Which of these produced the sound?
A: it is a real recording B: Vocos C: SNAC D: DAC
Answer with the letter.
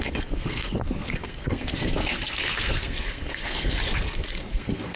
C